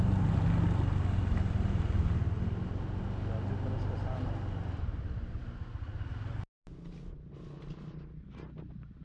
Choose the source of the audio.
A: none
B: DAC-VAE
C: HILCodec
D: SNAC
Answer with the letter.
A